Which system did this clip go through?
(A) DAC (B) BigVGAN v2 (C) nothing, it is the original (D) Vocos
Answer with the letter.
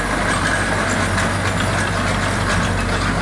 C